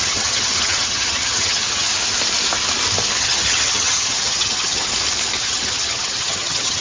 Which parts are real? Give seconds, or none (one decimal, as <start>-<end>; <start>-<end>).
1.9-3.2; 4.9-5.4